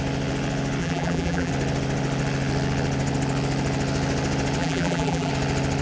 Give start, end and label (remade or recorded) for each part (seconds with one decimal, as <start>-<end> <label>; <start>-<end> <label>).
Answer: 0.0-0.8 recorded; 0.8-1.5 remade; 1.5-4.6 recorded; 4.6-5.3 remade; 5.3-5.8 recorded